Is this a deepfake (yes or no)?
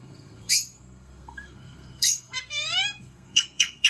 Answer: yes